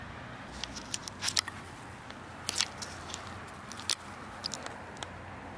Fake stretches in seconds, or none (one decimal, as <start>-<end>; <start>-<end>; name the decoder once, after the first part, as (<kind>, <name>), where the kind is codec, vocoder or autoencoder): none